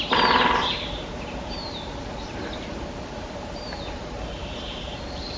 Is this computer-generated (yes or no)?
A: no